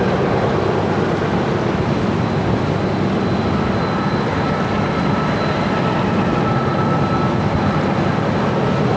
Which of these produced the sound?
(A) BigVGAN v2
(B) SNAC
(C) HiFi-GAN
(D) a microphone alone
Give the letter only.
D